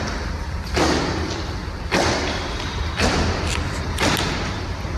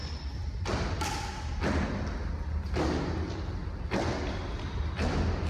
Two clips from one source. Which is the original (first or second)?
second